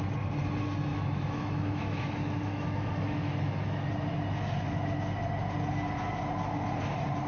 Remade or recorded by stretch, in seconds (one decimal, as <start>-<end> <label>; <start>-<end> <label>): 0.0-0.9 recorded; 0.9-3.9 remade; 3.9-7.3 recorded